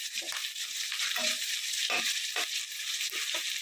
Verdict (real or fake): fake